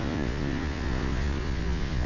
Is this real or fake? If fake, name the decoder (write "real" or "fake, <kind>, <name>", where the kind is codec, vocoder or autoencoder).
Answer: fake, vocoder, Vocos